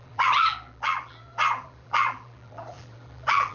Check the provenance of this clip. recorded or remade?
remade